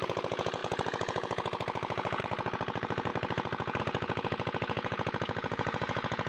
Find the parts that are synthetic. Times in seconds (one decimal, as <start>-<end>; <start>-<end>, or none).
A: 0.0-6.3